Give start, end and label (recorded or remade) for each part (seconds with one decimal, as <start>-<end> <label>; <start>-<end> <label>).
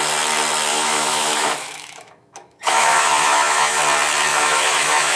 0.0-0.7 recorded; 0.7-3.8 remade; 3.8-4.3 recorded; 4.3-5.2 remade